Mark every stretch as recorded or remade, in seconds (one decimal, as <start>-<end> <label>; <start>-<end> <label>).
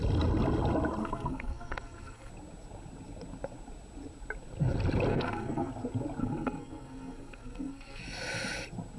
0.0-1.0 recorded; 1.0-2.3 remade; 2.3-5.1 recorded; 5.1-5.7 remade; 5.7-6.2 recorded; 6.2-8.0 remade; 8.0-9.0 recorded